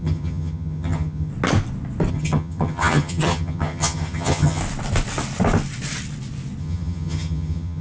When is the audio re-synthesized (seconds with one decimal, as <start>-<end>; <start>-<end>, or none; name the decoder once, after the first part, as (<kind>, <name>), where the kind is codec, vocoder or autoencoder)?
0.0-1.3 (vocoder, HiFi-GAN); 2.1-4.6; 6.6-7.8